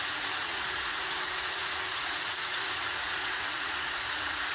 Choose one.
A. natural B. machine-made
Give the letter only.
B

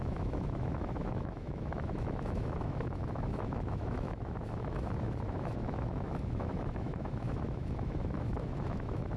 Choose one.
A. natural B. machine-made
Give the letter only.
B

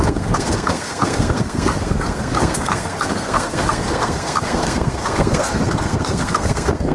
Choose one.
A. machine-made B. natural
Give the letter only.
A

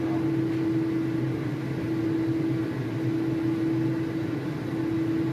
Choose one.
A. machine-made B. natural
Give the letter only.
B